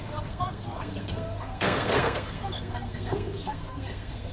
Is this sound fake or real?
fake